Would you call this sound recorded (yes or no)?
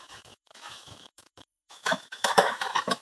no